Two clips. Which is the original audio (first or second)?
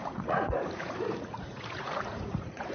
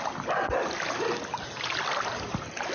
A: second